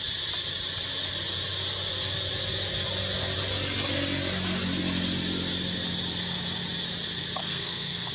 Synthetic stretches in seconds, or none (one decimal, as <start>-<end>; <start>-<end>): 7.4-8.1